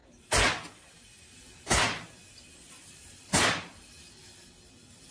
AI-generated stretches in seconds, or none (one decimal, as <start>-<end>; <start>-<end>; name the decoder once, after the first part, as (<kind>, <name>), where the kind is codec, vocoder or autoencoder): none